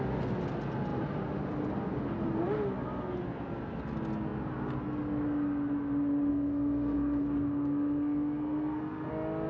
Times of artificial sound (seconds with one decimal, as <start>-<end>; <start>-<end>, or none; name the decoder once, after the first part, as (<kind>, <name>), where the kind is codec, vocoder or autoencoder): 6.3-9.1 (codec, SNAC)